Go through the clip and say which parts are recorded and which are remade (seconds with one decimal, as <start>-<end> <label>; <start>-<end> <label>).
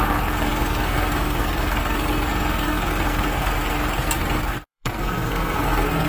0.0-6.1 remade